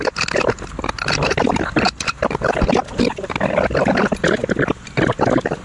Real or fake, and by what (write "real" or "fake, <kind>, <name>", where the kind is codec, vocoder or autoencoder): real